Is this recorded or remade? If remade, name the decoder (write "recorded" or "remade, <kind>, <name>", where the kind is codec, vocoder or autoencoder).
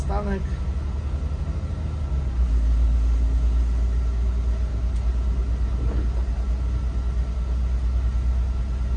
recorded